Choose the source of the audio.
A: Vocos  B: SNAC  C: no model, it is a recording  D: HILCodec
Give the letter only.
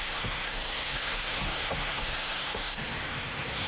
B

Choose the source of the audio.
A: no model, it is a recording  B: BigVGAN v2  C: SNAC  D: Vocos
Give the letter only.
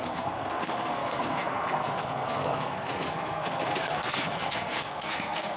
C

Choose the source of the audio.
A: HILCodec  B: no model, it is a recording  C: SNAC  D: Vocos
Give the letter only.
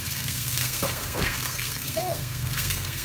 C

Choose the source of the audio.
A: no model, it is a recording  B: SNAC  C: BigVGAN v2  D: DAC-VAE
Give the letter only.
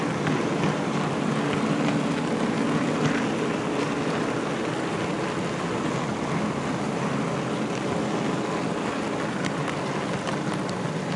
A